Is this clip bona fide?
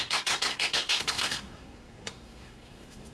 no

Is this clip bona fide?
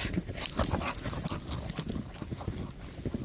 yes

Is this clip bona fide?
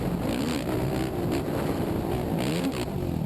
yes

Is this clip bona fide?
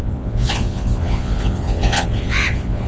no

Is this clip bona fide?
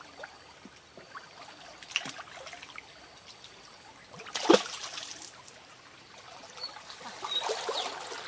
yes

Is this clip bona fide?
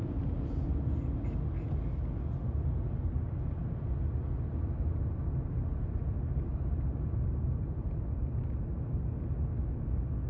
yes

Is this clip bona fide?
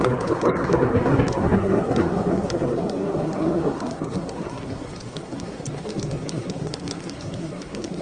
no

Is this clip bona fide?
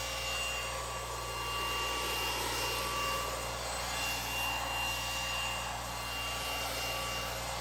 yes